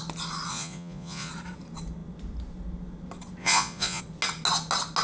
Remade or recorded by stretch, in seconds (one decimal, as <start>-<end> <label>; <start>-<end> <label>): 0.0-0.5 recorded; 0.5-1.3 remade; 1.3-3.4 recorded; 3.4-4.0 remade; 4.0-5.0 recorded